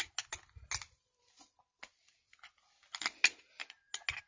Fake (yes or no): no